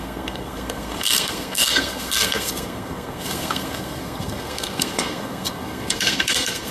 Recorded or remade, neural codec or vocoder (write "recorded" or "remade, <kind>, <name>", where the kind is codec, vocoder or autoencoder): remade, codec, SNAC